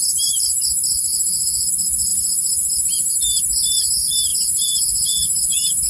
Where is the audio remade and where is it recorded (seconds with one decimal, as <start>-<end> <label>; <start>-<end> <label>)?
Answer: 0.0-1.1 recorded; 1.1-1.7 remade; 1.7-2.1 recorded; 2.1-3.1 remade; 3.1-4.3 recorded; 4.3-5.9 remade